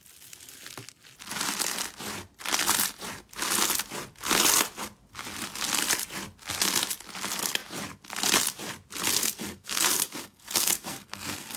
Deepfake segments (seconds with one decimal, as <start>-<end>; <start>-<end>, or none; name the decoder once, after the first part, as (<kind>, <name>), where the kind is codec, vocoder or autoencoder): 9.2-11.6 (codec, SNAC)